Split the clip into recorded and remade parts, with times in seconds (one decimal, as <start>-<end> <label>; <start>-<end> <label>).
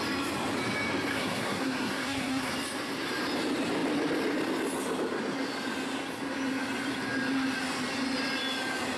0.0-1.1 recorded; 1.1-2.5 remade; 2.5-9.0 recorded